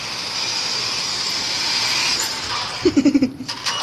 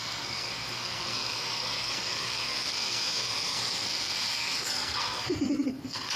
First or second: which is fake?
second